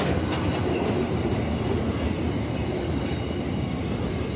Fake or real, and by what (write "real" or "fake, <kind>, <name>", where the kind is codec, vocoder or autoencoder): real